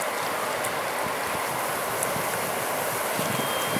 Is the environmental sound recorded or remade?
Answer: recorded